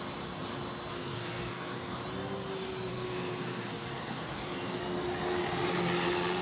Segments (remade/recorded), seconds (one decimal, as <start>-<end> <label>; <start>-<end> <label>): 0.0-0.9 recorded; 0.9-2.0 remade; 2.0-2.9 recorded; 2.9-4.8 remade; 4.8-6.4 recorded